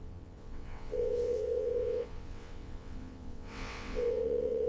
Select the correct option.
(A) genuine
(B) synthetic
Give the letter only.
B